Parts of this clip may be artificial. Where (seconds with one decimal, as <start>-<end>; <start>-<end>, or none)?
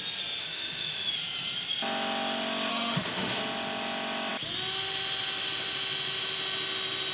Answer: 0.4-1.1; 2.7-3.4